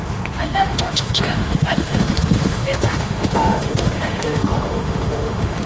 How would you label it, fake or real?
fake